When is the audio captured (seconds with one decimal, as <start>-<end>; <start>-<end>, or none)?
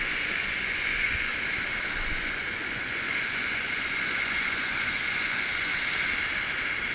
1.3-2.0; 5.7-6.9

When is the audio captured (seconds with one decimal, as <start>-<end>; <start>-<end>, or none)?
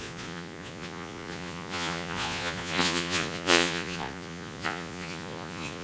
none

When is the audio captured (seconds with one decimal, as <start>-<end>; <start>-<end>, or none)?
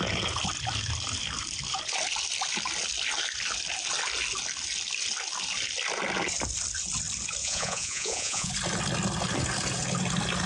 0.0-7.4; 8.5-10.5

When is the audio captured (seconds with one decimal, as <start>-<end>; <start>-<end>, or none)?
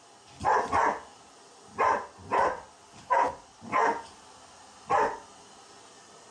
0.0-6.3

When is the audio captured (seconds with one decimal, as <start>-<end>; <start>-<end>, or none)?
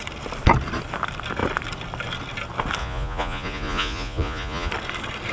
0.0-2.8; 4.7-5.3